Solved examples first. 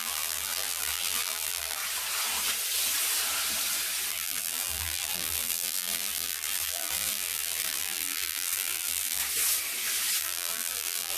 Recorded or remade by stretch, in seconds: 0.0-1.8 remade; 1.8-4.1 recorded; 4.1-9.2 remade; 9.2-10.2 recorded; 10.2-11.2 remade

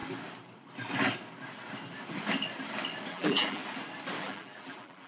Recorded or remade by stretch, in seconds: 0.0-3.1 recorded; 3.1-3.6 remade; 3.6-4.2 recorded; 4.2-5.1 remade

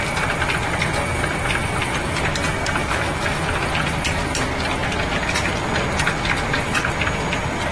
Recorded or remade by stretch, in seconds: 0.0-2.8 recorded; 2.8-3.4 remade; 3.4-7.7 recorded